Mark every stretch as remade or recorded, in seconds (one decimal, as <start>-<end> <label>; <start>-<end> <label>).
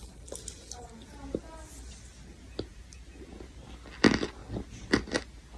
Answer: 0.0-2.7 recorded; 2.7-3.7 remade; 3.7-5.6 recorded